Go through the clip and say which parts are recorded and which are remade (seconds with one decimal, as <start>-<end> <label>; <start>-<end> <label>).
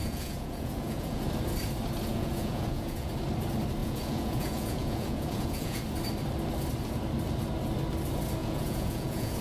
0.0-1.2 remade; 1.2-2.1 recorded; 2.1-3.1 remade; 3.1-3.8 recorded; 3.8-5.8 remade; 5.8-8.4 recorded; 8.4-9.4 remade